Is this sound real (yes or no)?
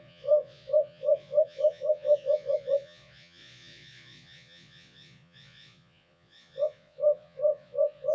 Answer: no